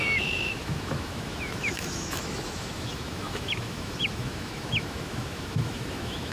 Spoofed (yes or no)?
yes